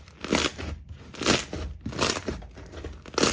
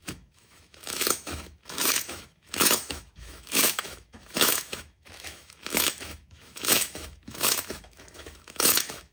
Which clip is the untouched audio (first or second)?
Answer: first